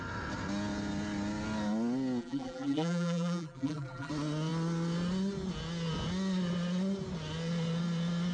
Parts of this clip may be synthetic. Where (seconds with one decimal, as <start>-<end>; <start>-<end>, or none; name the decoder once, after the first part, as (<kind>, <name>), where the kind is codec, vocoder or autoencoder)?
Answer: 2.2-4.1 (vocoder, BigVGAN v2)